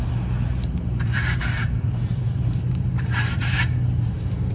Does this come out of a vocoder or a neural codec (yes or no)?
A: yes